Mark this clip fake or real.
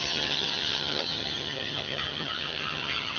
fake